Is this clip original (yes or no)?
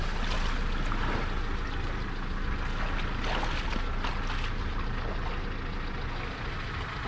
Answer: yes